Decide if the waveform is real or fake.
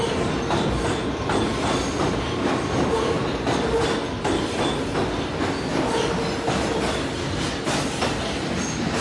real